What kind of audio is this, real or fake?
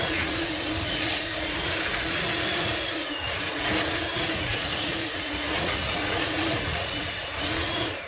fake